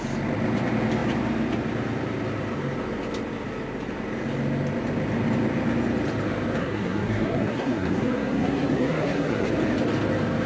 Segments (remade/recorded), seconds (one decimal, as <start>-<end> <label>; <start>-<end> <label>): 0.0-6.6 recorded; 6.6-9.5 remade; 9.5-10.5 recorded